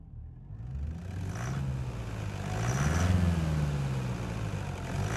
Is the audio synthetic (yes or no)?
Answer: no